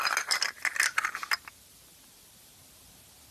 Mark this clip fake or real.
real